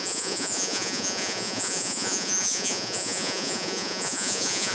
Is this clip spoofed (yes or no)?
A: yes